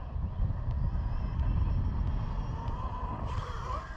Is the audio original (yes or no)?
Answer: yes